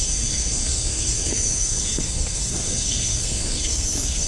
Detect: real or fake fake